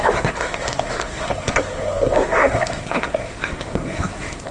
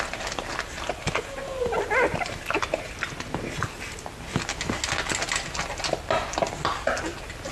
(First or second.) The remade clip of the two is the first